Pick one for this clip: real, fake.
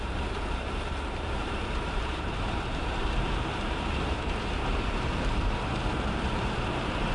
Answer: fake